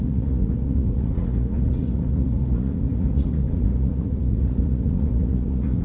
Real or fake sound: fake